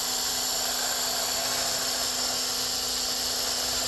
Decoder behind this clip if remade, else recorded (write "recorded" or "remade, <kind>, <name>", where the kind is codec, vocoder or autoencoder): recorded